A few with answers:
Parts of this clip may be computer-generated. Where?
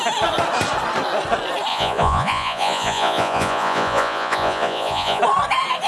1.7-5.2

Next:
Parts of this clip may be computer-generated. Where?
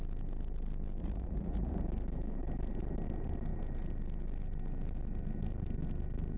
1.0-1.8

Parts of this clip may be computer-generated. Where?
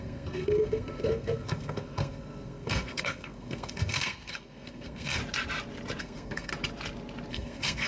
0.0-5.2; 6.0-6.5; 7.3-7.9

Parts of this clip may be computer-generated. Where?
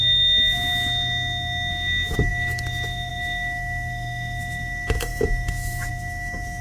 0.0-0.7; 1.7-6.6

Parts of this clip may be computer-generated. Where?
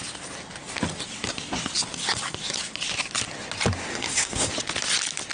3.9-4.5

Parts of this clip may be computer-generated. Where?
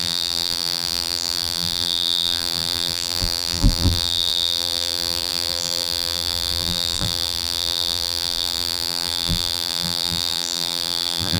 0.0-11.4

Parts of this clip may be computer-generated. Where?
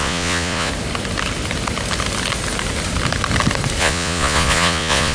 0.0-0.7; 3.8-5.1